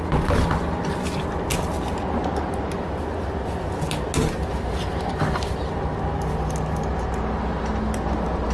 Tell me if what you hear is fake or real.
real